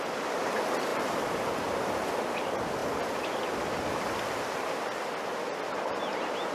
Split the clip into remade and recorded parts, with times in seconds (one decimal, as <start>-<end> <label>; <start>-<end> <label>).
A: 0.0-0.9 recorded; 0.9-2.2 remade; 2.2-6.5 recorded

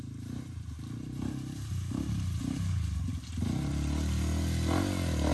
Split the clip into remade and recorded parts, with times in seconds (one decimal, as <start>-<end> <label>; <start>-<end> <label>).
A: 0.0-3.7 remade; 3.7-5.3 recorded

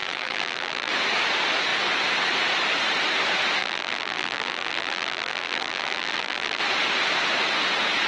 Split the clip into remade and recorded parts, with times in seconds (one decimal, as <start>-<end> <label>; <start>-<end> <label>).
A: 0.0-0.9 remade; 0.9-3.6 recorded; 3.6-6.6 remade; 6.6-8.1 recorded

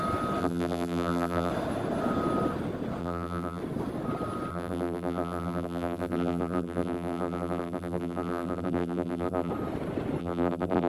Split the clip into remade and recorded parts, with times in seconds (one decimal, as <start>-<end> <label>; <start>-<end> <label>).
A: 0.0-0.4 recorded; 0.4-1.5 remade; 1.5-3.0 recorded; 3.0-3.6 remade; 3.6-4.5 recorded; 4.5-9.5 remade; 9.5-10.2 recorded; 10.2-10.9 remade

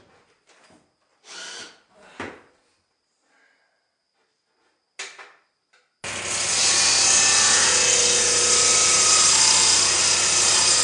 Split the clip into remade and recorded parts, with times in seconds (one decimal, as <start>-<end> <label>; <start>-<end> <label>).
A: 0.0-1.1 recorded; 1.1-1.7 remade; 1.7-6.6 recorded; 6.6-7.7 remade; 7.7-8.8 recorded; 8.8-10.8 remade

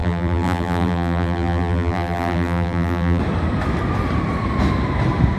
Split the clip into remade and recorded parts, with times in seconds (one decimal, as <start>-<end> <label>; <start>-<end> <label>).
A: 0.0-3.2 remade; 3.2-5.4 recorded

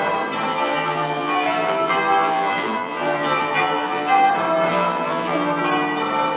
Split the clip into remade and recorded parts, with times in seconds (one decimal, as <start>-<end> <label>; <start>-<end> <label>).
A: 0.0-0.5 recorded; 0.5-4.3 remade; 4.3-4.7 recorded; 4.7-5.6 remade; 5.6-6.4 recorded